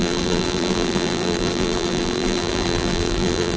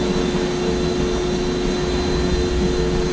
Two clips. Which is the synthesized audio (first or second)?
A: first